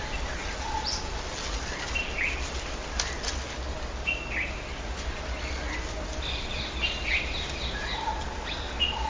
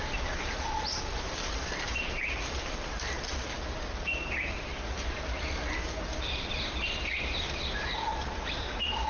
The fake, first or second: second